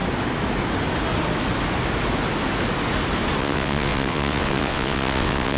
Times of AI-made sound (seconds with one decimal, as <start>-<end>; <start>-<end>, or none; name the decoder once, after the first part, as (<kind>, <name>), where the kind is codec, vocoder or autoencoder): 3.4-5.6 (vocoder, WaveNeXt)